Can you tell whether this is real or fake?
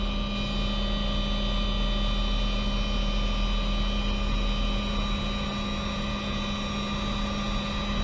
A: real